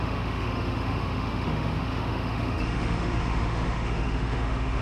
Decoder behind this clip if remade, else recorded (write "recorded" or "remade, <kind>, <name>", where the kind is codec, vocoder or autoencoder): remade, autoencoder, DAC-VAE